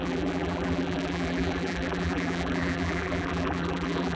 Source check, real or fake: fake